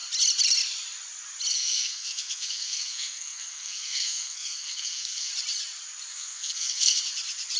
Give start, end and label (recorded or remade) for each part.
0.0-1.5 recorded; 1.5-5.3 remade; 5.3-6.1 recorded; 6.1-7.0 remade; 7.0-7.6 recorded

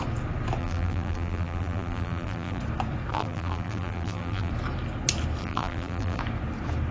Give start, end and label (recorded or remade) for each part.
0.0-0.6 recorded; 0.6-2.6 remade; 2.6-3.1 recorded; 3.1-4.5 remade; 4.5-5.4 recorded; 5.4-6.2 remade; 6.2-6.9 recorded

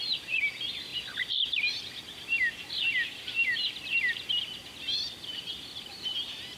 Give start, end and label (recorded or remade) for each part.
0.0-0.9 recorded; 0.9-1.7 remade; 1.7-4.6 recorded; 4.6-6.6 remade

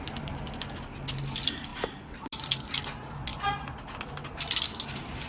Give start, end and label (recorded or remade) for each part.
0.0-5.3 recorded

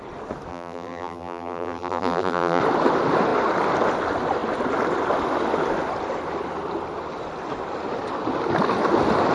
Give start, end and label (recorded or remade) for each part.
0.0-0.5 recorded; 0.5-2.6 remade; 2.6-9.3 recorded